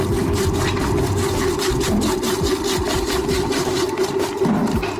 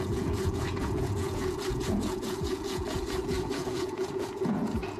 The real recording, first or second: first